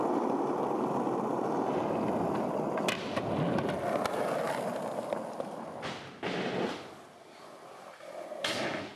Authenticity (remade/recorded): recorded